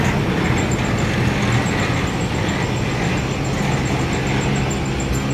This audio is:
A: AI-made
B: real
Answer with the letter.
B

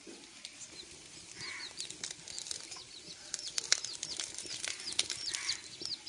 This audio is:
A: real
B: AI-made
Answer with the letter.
B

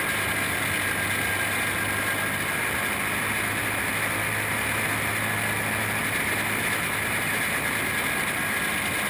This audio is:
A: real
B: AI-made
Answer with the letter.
A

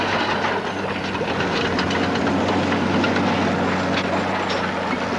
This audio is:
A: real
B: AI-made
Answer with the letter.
A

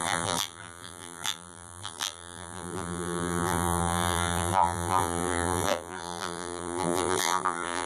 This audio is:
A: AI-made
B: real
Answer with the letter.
A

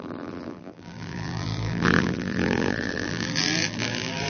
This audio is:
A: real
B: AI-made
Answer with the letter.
B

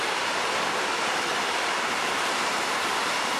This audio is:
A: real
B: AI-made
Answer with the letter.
B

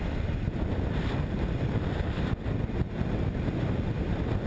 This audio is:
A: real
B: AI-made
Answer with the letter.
A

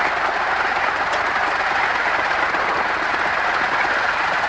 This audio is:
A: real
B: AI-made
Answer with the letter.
A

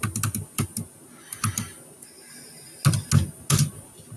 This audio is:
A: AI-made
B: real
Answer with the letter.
B